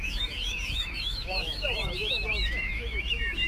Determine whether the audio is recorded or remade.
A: remade